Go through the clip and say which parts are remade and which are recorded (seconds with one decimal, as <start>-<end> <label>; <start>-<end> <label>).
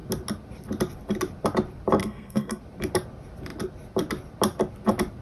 0.0-2.0 recorded; 2.0-2.6 remade; 2.6-5.2 recorded